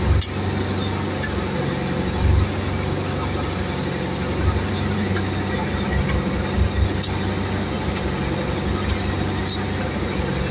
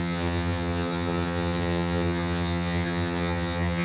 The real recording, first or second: first